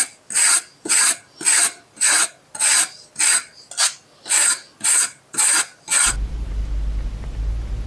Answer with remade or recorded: recorded